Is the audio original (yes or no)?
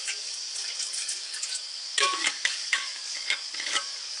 no